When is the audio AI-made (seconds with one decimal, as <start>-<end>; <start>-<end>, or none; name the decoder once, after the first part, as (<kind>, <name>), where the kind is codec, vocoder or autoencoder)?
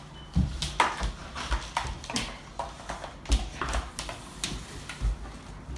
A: none